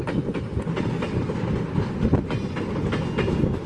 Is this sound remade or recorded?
recorded